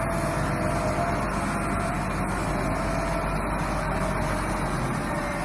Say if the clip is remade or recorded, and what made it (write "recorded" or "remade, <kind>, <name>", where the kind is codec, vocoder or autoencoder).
recorded